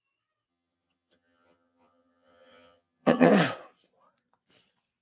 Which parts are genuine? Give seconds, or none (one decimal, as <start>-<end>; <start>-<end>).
0.0-0.5; 3.3-5.0